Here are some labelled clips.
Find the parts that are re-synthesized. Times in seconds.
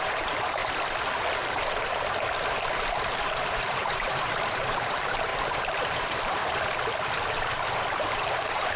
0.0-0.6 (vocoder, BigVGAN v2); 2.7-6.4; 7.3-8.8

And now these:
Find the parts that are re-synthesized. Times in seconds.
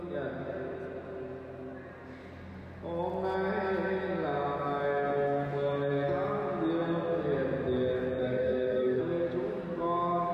8.2-9.0 (autoencoder, DAC-VAE)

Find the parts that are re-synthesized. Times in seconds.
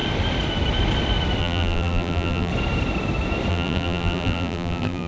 1.4-2.5 (vocoder, BigVGAN v2); 3.5-5.1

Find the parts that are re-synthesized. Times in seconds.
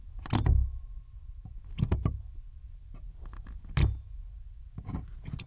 none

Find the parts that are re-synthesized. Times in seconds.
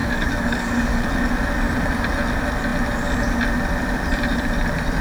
0.0-1.3 (codec, DAC)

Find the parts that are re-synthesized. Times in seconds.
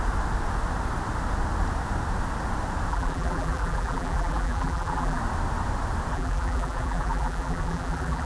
2.9-5.2 (vocoder, BigVGAN v2); 6.1-8.3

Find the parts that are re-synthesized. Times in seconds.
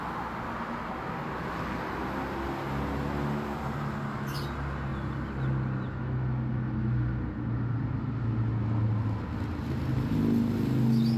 none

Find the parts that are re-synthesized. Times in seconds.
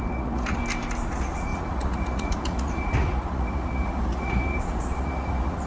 0.0-0.6 (vocoder, Vocos); 1.1-5.7